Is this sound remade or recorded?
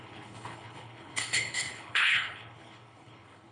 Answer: remade